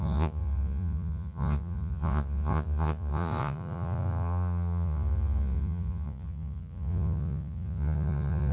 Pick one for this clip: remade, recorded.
remade